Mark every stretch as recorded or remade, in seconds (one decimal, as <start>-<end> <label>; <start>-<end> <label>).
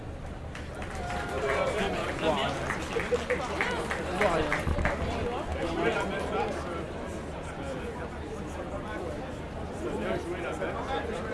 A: 0.0-11.3 remade